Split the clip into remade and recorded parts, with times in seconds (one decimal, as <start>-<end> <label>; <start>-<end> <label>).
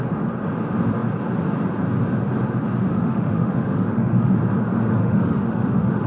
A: 0.0-2.9 recorded; 2.9-4.4 remade; 4.4-5.0 recorded; 5.0-6.1 remade